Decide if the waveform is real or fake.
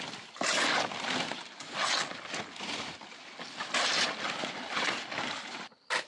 real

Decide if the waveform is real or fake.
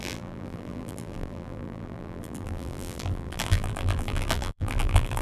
fake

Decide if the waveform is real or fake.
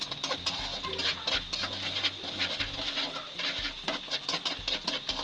real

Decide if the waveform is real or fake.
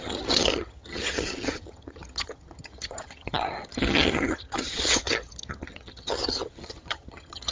fake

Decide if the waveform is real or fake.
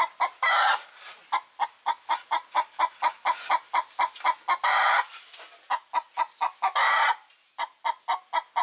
real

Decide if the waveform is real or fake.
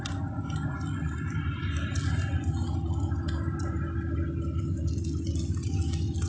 real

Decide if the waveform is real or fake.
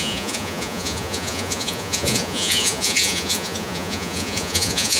fake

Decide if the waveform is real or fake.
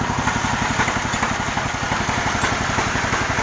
real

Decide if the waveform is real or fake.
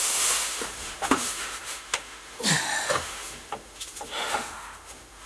fake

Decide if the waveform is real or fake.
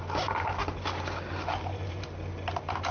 real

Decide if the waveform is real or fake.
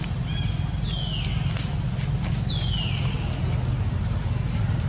real